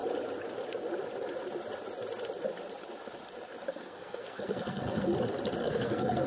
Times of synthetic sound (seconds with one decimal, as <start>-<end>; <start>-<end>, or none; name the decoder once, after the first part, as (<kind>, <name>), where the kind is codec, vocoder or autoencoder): 3.7-5.1 (codec, SNAC); 5.6-6.3